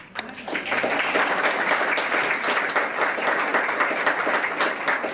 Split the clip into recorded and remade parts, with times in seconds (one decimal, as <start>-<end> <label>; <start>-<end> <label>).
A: 0.0-5.1 recorded